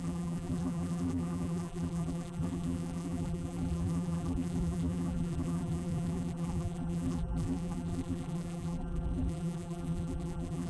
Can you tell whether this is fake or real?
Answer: fake